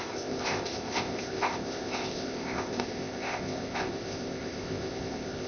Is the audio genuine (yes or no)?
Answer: no